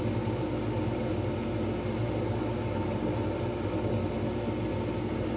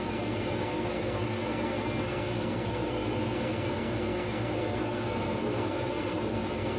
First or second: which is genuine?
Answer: first